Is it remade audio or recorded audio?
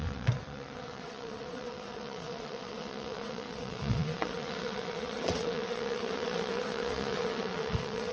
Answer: remade